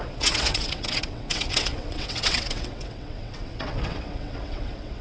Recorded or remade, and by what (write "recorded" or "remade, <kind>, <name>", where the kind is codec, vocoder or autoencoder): remade, vocoder, WaveNeXt